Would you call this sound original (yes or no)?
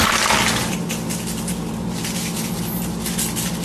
yes